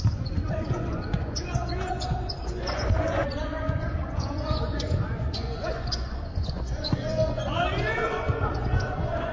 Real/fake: fake